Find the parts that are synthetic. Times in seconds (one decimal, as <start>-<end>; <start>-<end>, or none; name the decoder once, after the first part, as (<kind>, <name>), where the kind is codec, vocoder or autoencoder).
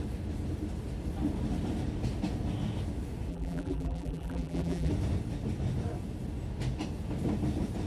3.3-4.9 (vocoder, BigVGAN v2)